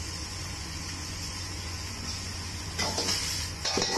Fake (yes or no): yes